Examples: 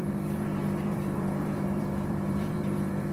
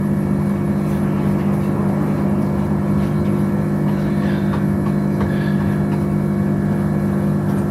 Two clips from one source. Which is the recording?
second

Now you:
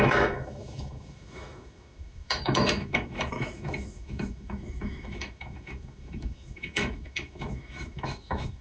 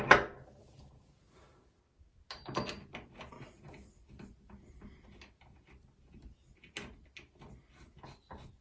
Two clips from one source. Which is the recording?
second